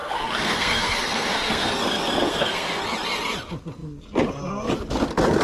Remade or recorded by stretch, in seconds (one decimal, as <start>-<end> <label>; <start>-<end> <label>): 0.0-1.7 remade; 1.7-2.3 recorded; 2.3-2.8 remade; 2.8-5.4 recorded

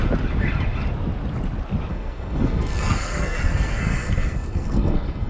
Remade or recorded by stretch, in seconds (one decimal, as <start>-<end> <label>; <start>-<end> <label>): 0.0-1.9 recorded; 1.9-5.3 remade